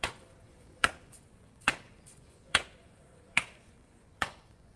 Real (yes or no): no